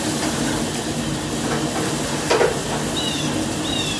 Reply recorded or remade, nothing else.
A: recorded